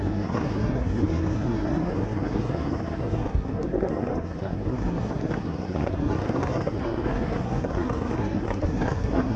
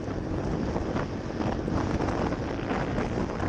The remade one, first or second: first